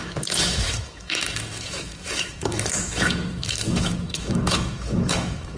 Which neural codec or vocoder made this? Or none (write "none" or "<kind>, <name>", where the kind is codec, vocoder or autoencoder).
autoencoder, DAC-VAE